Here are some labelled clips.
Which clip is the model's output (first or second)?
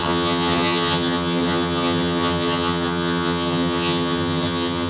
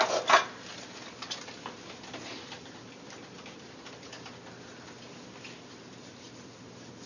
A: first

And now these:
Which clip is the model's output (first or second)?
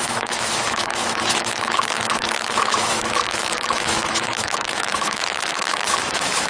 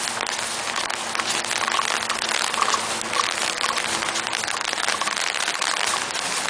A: first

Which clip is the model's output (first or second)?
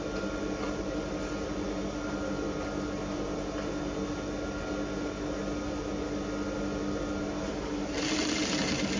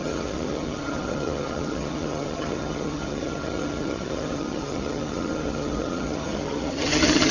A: second